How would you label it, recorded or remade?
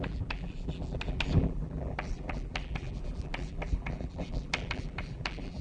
remade